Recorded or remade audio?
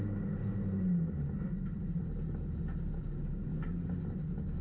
recorded